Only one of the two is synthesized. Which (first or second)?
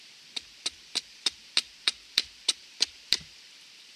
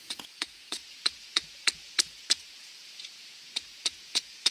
second